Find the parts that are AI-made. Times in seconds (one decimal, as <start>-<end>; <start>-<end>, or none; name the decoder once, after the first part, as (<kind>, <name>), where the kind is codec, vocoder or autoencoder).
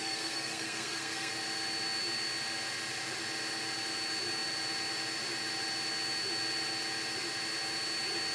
0.0-1.3 (codec, SNAC)